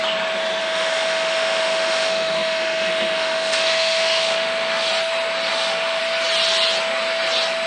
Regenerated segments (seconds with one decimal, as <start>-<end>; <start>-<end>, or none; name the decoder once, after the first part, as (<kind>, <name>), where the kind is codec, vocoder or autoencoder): 0.6-4.9 (autoencoder, DAC-VAE); 5.5-6.0